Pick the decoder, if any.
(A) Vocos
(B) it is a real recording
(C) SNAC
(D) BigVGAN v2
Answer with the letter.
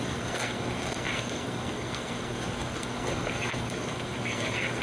C